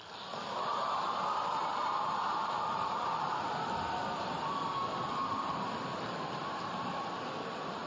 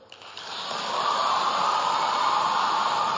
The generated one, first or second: second